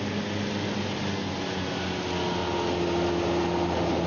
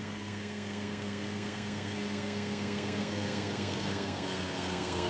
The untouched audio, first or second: first